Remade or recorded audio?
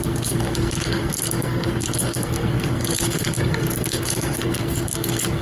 remade